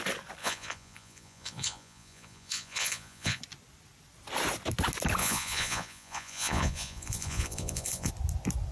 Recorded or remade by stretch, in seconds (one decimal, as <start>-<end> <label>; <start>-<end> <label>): 0.0-0.4 recorded; 0.4-3.4 remade; 3.4-5.2 recorded; 5.2-8.1 remade; 8.1-8.7 recorded